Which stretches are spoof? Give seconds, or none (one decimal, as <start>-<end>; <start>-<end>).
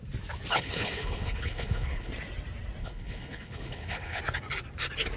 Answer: 0.5-2.1; 2.8-4.2